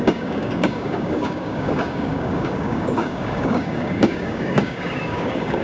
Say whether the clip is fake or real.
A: fake